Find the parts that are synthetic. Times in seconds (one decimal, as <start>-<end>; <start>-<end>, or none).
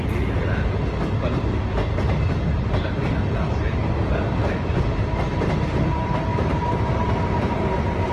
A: 6.3-7.1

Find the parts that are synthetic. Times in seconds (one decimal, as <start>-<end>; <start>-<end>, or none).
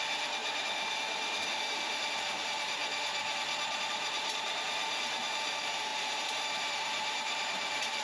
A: 0.0-2.8; 3.8-8.0